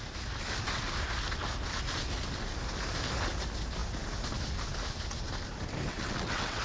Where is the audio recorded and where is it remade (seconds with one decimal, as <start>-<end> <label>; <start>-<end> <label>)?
0.0-5.9 recorded; 5.9-6.6 remade